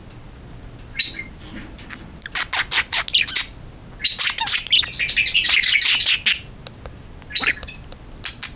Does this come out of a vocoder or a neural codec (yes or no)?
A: no